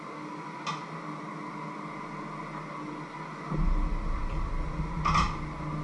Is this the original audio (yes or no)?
yes